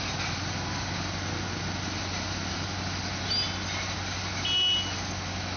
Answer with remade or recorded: recorded